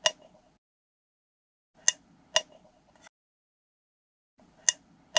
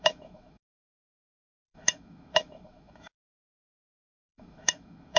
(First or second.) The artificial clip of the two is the second